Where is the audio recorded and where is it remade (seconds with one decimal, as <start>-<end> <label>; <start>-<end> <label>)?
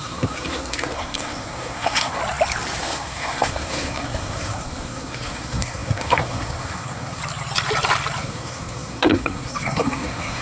0.0-2.2 remade; 2.2-2.8 recorded; 2.8-7.2 remade; 7.2-8.2 recorded; 8.2-10.4 remade